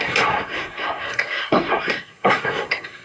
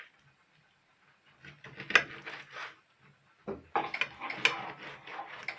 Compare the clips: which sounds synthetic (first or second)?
first